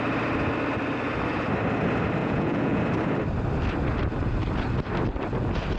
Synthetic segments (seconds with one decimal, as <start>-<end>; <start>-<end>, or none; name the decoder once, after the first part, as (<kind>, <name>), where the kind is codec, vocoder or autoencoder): 2.2-2.8 (vocoder, Vocos)